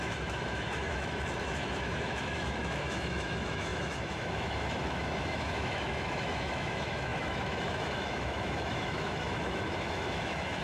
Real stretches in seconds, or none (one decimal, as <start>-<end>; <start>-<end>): none